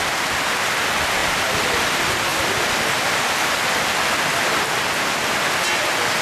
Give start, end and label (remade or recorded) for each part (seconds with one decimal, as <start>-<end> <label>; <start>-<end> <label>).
0.0-1.2 recorded; 1.2-1.7 remade; 1.7-2.3 recorded; 2.3-3.6 remade; 3.6-6.2 recorded